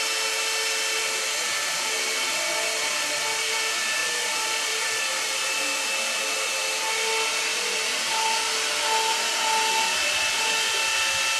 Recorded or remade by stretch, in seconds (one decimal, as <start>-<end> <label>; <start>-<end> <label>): 0.0-4.0 recorded; 4.0-4.7 remade; 4.7-11.4 recorded